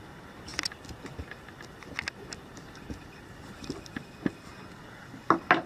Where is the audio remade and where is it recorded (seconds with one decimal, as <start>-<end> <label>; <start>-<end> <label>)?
0.0-5.7 recorded